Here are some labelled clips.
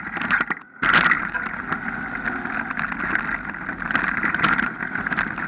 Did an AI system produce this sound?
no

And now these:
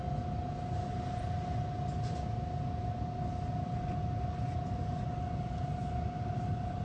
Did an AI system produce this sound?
no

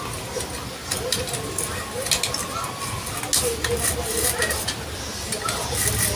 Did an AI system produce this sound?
no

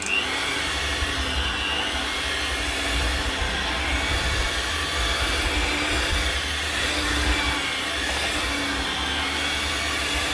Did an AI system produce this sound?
no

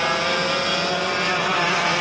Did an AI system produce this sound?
no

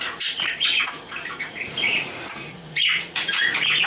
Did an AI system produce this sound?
yes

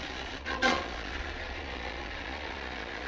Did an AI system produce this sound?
yes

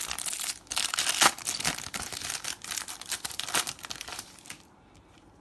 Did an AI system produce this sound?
no